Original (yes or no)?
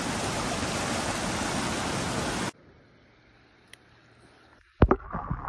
yes